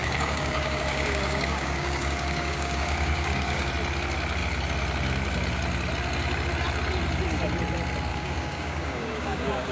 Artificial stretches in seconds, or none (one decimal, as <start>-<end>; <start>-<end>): 0.0-3.7; 8.1-9.7